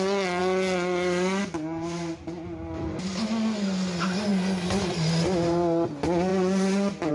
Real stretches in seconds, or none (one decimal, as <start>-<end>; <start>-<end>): 0.0-7.1